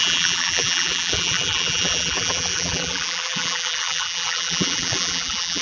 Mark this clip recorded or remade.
remade